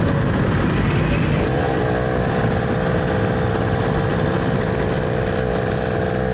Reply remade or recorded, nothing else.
recorded